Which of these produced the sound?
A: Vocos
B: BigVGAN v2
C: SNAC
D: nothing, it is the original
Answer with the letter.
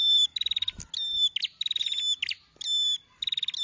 D